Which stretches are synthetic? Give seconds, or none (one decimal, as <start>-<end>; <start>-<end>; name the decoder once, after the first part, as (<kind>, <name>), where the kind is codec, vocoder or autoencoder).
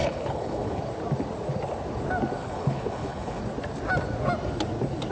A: 0.0-0.8 (codec, HILCodec); 2.4-3.4